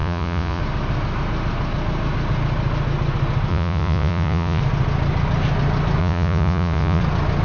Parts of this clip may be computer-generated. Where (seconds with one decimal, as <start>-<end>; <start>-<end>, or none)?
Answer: 0.0-0.6; 3.5-4.6; 6.0-7.0